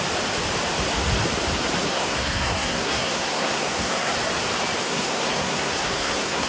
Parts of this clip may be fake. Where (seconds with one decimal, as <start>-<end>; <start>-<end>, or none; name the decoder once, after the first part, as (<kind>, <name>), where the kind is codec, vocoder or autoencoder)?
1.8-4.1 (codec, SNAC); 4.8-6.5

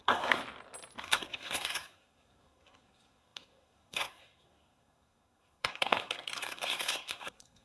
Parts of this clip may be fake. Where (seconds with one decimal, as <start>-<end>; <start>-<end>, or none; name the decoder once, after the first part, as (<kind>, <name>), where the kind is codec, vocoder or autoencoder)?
0.0-0.4 (codec, SNAC); 1.0-7.6

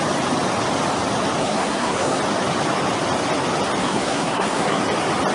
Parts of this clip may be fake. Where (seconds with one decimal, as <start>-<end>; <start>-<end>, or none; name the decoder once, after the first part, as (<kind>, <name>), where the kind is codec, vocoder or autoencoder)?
1.4-2.2 (codec, SNAC); 3.8-4.8

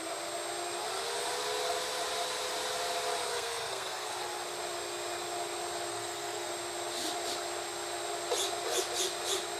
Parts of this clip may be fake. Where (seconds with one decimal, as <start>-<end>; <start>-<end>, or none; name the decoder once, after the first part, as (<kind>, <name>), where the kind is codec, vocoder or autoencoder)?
3.3-4.2 (codec, SNAC); 5.9-6.5

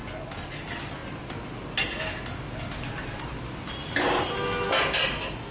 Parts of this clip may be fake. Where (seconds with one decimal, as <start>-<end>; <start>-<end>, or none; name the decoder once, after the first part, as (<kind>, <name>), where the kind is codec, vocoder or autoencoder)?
none

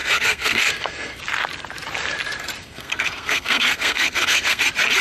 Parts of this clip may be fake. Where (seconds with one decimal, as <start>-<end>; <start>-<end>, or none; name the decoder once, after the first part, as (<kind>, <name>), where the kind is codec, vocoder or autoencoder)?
0.0-1.2 (codec, SNAC); 2.6-4.6

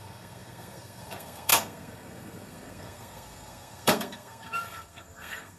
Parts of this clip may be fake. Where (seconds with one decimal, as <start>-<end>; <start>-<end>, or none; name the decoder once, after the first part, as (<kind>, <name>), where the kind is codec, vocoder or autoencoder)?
0.0-5.6 (codec, SNAC)

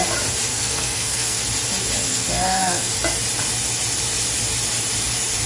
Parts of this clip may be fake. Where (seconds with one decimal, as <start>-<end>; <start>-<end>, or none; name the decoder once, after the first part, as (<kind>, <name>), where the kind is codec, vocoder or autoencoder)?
0.5-1.4 (codec, SNAC); 2.1-2.9